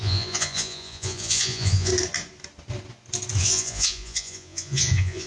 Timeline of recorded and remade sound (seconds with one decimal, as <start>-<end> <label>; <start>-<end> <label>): 0.0-1.9 remade; 1.9-3.4 recorded; 3.4-5.3 remade